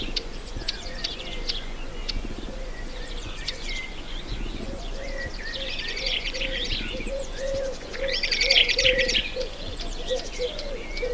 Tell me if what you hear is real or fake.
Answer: fake